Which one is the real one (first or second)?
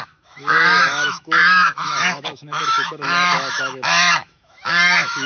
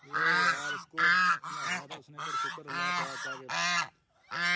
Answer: second